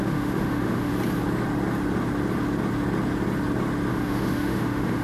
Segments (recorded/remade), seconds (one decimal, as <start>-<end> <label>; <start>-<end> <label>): 0.0-0.9 remade; 0.9-3.9 recorded; 3.9-5.0 remade